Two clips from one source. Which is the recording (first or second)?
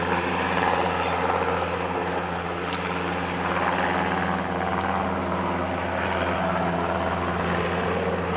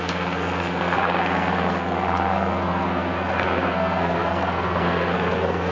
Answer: first